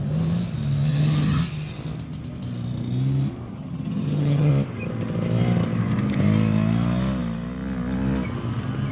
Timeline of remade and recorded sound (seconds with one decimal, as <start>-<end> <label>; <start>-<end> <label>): 0.0-0.9 recorded; 0.9-1.4 remade; 1.4-3.5 recorded; 3.5-4.5 remade; 4.5-8.9 recorded